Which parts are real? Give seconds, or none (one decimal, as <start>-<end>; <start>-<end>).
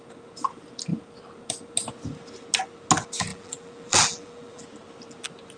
0.0-3.3; 4.6-5.6